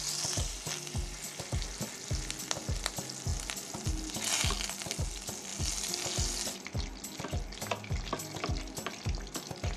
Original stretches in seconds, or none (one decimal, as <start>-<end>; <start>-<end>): 0.0-9.8